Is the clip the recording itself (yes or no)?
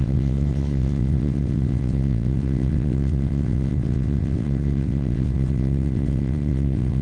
no